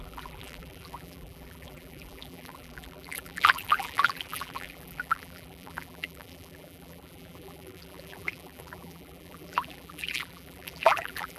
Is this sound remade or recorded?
remade